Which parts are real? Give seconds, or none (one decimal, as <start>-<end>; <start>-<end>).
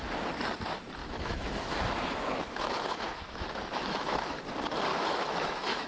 0.0-1.0; 4.4-4.9